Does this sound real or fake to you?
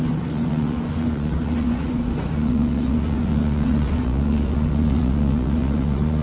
fake